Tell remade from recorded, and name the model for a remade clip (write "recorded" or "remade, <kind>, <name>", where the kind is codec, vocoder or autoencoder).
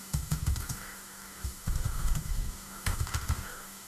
remade, codec, DAC